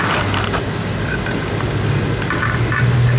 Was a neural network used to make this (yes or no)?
no